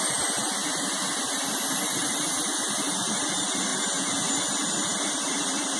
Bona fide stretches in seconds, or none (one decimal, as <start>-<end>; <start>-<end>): 0.0-5.8